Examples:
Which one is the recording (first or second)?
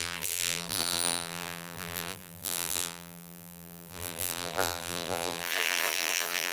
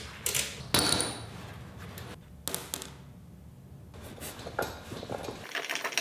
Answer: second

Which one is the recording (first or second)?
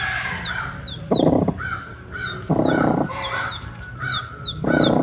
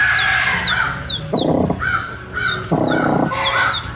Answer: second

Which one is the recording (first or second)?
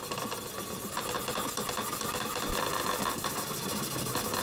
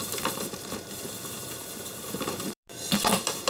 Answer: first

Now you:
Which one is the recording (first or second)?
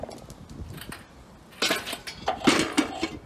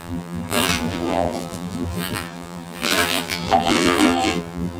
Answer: first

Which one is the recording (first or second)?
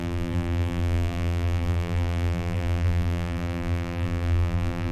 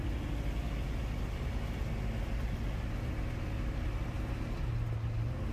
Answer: second